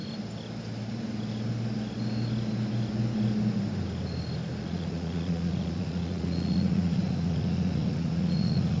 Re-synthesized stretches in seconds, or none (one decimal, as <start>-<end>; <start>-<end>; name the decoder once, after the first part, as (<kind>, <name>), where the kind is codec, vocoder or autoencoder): 4.6-8.8 (vocoder, Vocos)